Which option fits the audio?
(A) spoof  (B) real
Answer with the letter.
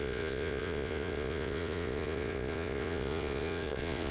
A